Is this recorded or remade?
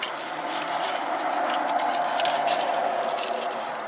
recorded